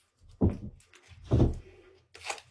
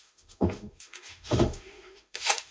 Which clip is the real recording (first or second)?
first